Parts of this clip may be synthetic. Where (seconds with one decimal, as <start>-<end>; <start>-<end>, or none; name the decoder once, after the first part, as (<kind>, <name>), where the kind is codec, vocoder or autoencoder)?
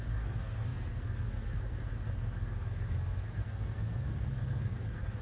0.0-5.2 (codec, SNAC)